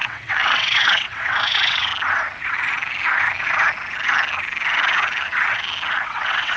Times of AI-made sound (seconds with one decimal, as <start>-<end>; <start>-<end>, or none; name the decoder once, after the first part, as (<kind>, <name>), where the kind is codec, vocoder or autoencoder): 0.0-1.9 (vocoder, WaveNeXt); 5.9-6.6